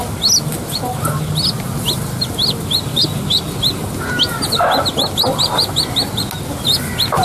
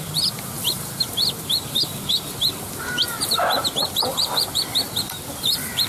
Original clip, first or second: first